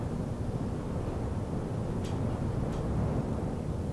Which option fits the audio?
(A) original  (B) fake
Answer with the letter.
A